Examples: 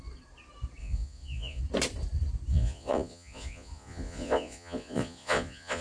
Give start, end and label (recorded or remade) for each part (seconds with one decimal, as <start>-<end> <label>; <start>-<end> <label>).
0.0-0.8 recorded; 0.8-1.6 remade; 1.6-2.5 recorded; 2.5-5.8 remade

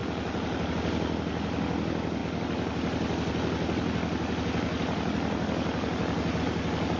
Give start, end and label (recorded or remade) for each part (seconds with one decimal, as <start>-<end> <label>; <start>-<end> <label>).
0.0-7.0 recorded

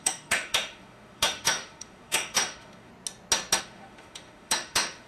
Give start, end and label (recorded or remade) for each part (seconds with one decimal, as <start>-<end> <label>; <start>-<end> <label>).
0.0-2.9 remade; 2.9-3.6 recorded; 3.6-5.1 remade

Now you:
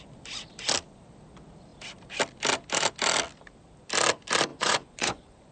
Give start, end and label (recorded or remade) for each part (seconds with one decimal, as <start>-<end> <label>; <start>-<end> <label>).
0.0-4.5 recorded; 4.5-5.5 remade

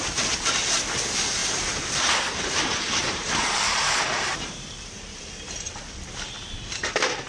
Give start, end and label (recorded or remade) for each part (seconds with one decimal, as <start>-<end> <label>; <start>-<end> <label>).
0.0-1.4 recorded; 1.4-5.8 remade; 5.8-7.3 recorded

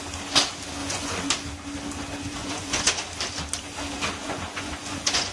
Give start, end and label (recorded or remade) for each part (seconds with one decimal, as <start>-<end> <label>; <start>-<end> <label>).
0.0-0.8 recorded; 0.8-1.3 remade; 1.3-2.4 recorded; 2.4-2.9 remade; 2.9-4.2 recorded; 4.2-5.3 remade